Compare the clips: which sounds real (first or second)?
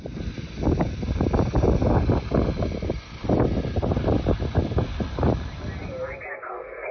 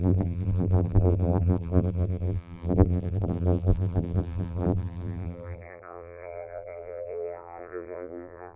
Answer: first